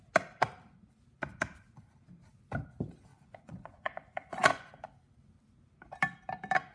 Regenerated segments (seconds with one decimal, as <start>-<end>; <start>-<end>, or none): 3.1-4.7